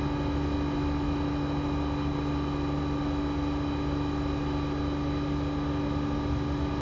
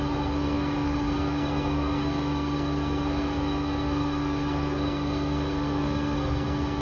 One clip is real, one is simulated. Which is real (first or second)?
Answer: first